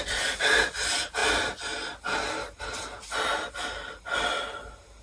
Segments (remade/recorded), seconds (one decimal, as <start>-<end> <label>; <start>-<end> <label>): 0.0-5.0 recorded